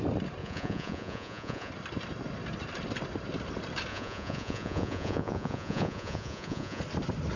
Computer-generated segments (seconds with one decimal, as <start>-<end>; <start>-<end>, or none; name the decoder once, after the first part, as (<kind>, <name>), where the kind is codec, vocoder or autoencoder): 0.4-1.7 (vocoder, Vocos); 3.9-6.8